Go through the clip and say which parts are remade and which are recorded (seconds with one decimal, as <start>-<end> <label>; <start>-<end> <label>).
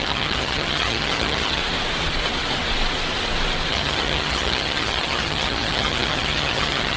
0.0-1.6 remade; 1.6-3.7 recorded; 3.7-7.0 remade